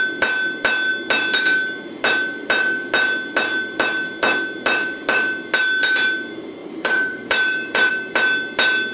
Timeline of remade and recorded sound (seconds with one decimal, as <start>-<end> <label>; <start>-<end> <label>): 0.0-6.6 recorded; 6.6-7.9 remade; 7.9-8.9 recorded